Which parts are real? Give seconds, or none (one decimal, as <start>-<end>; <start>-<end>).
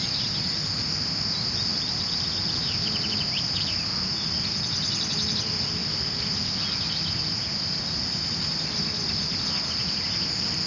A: 0.0-10.7